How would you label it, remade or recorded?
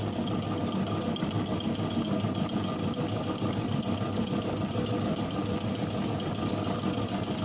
recorded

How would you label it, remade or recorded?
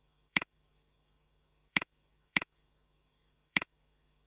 remade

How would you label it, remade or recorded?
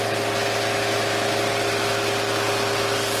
recorded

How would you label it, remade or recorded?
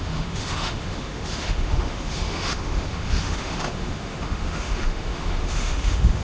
remade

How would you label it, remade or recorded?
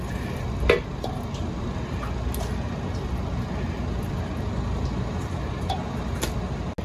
recorded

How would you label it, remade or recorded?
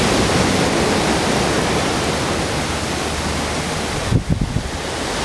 recorded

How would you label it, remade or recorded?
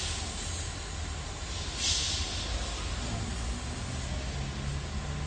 recorded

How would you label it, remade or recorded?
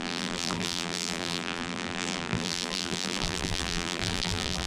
remade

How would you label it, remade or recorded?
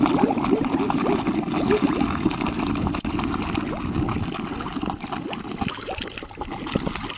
recorded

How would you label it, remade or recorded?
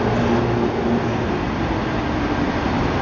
recorded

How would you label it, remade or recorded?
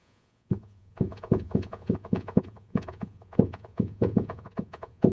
remade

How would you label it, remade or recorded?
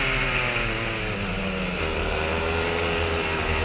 recorded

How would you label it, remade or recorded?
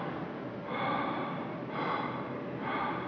recorded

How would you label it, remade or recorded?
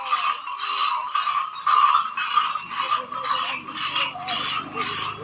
recorded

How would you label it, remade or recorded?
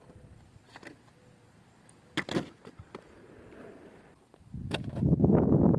recorded